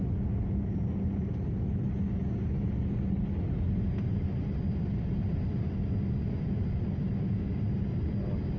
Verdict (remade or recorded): recorded